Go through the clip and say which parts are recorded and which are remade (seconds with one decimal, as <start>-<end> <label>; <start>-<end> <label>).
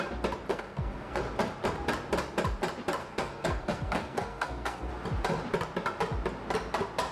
0.0-0.5 recorded; 0.5-1.2 remade; 1.2-3.0 recorded; 3.0-4.9 remade; 4.9-7.1 recorded